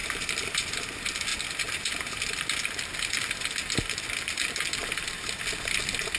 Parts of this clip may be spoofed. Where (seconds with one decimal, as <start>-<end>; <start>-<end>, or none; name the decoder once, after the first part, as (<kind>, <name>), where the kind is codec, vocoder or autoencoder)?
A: 0.0-0.8 (vocoder, BigVGAN v2)